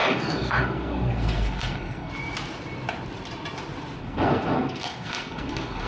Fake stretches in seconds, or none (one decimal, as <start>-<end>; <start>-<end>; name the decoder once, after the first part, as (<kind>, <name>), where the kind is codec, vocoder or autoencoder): 0.0-2.1 (codec, SNAC); 4.0-5.9